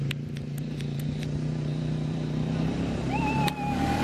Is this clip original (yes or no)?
no